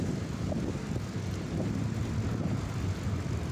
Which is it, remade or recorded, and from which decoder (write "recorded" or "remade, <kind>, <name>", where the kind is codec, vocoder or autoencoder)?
recorded